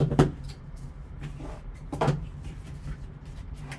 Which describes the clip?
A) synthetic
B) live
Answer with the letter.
A